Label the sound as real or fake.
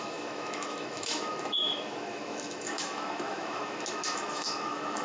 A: fake